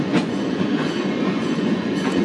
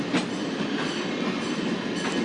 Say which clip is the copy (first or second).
first